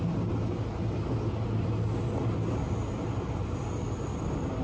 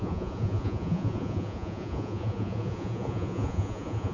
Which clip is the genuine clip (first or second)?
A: first